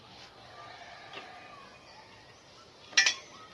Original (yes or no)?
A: yes